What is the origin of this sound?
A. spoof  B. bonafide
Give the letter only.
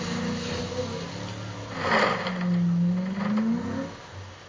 B